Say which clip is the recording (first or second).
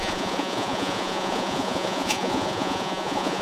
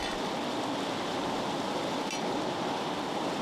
second